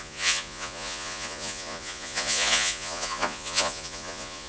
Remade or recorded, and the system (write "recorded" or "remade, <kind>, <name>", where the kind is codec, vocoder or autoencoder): remade, vocoder, Vocos